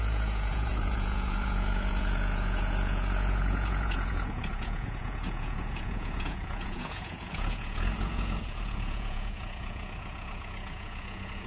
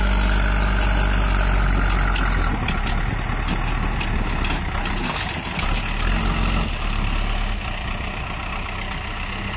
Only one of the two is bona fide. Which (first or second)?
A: second